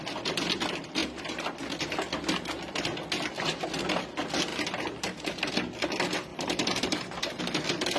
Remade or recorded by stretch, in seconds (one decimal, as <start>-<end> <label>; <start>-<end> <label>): 0.0-4.5 recorded; 4.5-5.5 remade; 5.5-6.3 recorded; 6.3-7.4 remade; 7.4-8.0 recorded